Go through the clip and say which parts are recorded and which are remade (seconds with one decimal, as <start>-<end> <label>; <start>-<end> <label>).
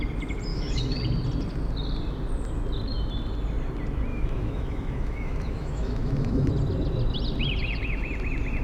0.0-0.5 recorded; 0.5-1.0 remade; 1.0-4.1 recorded; 4.1-6.5 remade; 6.5-8.6 recorded